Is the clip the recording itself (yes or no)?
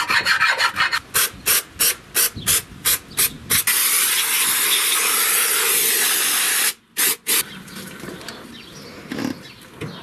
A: yes